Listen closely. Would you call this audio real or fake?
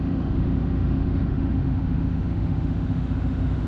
fake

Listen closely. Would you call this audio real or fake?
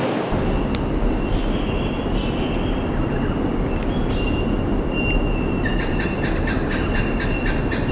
real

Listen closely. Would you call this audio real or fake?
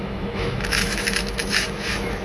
fake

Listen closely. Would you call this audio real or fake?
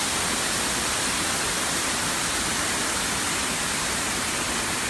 real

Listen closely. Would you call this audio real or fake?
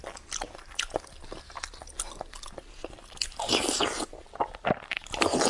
real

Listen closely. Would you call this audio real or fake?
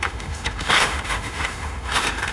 fake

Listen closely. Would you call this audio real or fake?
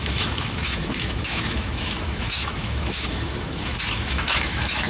fake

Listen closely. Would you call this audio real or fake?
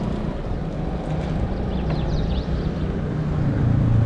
real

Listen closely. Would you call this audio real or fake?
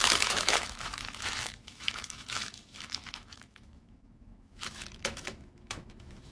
fake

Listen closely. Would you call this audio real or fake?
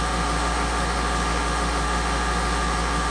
fake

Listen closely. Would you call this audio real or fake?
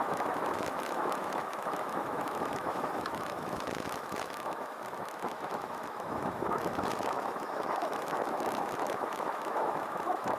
fake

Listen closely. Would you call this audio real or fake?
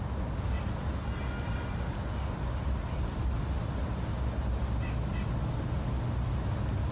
real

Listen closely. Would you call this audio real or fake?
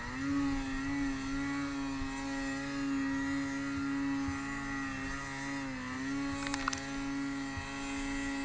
real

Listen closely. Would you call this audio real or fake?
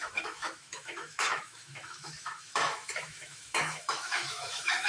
fake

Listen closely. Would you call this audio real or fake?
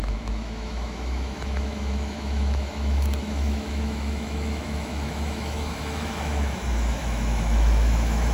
fake